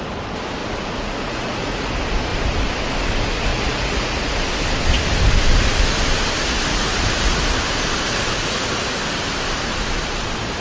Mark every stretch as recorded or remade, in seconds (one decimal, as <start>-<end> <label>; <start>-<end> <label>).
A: 0.0-0.6 recorded; 0.6-1.9 remade; 1.9-3.5 recorded; 3.5-4.4 remade; 4.4-6.7 recorded; 6.7-7.4 remade; 7.4-10.6 recorded